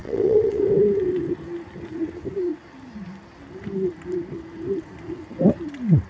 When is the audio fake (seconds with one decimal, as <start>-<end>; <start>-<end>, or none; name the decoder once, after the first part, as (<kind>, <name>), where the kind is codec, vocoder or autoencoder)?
0.0-0.6 (vocoder, WaveNeXt)